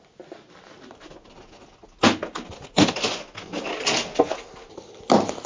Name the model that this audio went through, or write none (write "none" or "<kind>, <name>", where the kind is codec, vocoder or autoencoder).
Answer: none